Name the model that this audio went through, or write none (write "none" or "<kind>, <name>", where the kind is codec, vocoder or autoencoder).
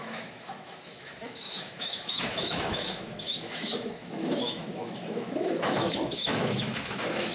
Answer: autoencoder, DAC-VAE